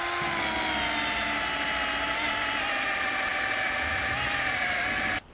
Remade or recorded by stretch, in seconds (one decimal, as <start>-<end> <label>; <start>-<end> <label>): 0.0-5.3 recorded